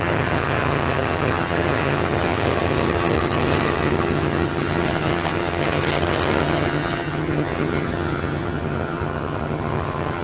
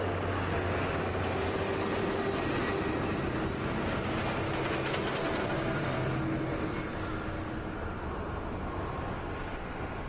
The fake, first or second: first